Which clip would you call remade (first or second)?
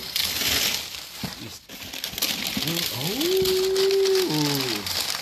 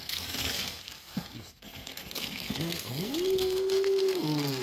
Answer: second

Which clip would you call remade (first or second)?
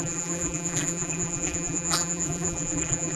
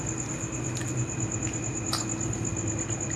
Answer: first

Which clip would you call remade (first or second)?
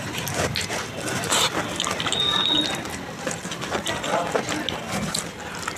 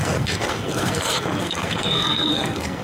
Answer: second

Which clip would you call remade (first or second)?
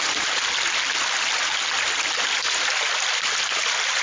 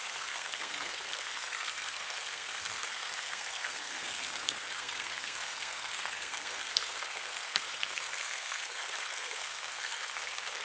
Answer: second